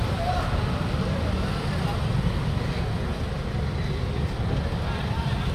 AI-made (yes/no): no